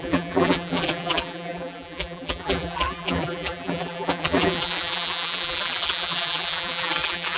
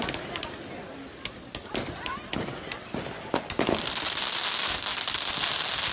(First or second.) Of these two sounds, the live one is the second